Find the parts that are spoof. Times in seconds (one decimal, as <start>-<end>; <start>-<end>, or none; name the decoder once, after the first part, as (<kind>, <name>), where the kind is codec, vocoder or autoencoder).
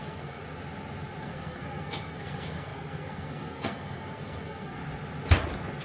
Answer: 0.0-0.4 (codec, SNAC); 1.2-4.8